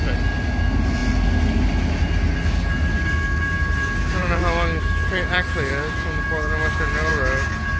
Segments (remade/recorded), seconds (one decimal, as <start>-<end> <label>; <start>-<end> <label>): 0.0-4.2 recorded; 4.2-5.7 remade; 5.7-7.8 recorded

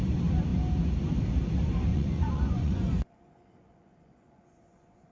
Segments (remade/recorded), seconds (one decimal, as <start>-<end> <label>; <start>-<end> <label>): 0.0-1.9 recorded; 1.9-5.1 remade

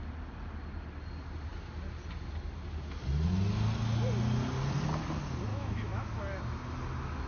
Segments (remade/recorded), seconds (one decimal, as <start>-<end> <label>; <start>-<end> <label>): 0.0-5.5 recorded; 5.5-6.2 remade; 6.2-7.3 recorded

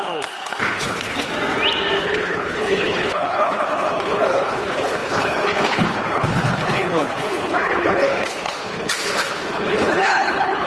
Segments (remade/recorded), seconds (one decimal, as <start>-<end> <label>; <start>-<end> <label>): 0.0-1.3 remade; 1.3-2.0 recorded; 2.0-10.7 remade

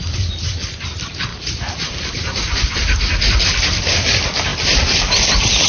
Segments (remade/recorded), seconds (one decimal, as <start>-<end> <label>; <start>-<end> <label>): 0.0-5.7 recorded

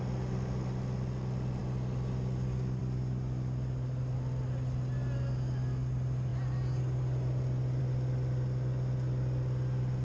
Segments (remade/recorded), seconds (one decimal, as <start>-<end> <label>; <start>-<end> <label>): 0.0-10.0 recorded

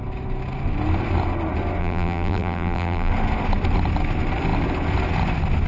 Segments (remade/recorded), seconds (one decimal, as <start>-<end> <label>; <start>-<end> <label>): 0.0-1.8 recorded; 1.8-3.1 remade; 3.1-5.7 recorded